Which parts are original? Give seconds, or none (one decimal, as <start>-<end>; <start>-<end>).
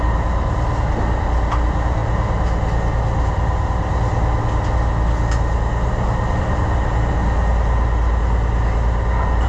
0.0-9.5